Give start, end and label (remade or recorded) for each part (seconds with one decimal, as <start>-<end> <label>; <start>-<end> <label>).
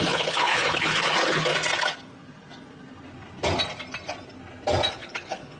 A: 0.0-1.5 remade; 1.5-4.9 recorded; 4.9-5.6 remade